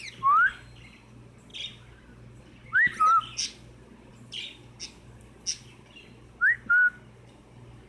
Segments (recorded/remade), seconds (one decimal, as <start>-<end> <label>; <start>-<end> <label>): 0.0-7.9 recorded